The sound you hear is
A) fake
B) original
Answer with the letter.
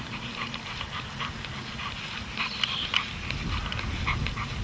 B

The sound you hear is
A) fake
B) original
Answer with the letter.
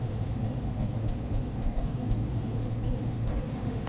A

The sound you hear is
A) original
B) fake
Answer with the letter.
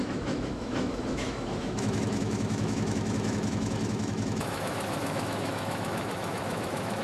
B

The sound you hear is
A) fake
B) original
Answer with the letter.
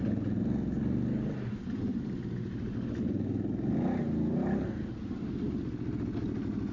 B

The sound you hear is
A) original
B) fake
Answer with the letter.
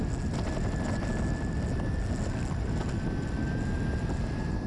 A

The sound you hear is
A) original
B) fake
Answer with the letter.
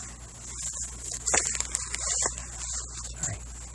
A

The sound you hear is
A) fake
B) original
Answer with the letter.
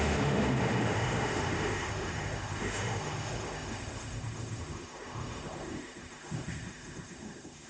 A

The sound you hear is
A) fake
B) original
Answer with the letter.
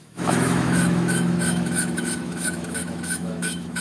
A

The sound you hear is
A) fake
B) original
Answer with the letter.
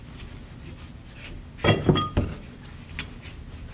B